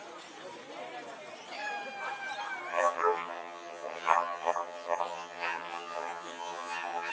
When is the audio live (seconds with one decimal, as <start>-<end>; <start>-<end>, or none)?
0.0-2.7